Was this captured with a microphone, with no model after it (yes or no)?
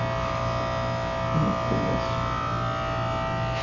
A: yes